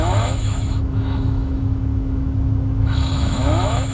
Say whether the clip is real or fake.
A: fake